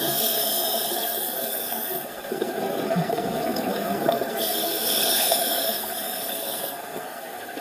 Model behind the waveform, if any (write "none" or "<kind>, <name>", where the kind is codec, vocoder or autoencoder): codec, SNAC